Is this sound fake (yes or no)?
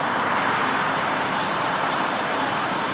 yes